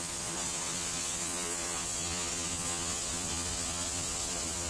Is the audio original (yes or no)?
no